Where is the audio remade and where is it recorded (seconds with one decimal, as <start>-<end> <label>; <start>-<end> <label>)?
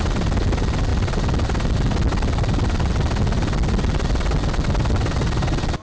0.0-5.8 recorded